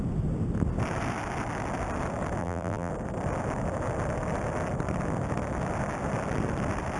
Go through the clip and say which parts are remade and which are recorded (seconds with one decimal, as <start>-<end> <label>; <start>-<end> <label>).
0.0-2.4 recorded; 2.4-2.9 remade; 2.9-7.0 recorded